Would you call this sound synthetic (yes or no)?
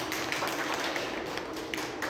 no